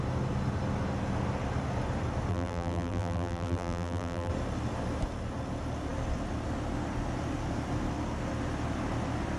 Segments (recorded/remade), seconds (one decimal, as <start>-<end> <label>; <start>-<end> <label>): 0.0-2.3 recorded; 2.3-4.3 remade; 4.3-9.4 recorded